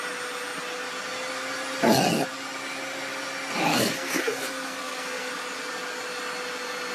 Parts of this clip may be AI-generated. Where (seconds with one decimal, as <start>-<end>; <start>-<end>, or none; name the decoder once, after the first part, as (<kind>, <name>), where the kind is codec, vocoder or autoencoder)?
3.7-5.3 (codec, SNAC)